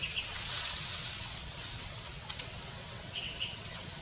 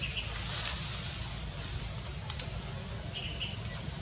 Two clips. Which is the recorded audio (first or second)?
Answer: second